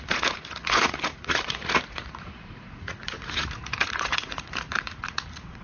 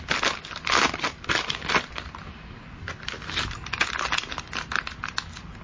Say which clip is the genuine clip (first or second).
second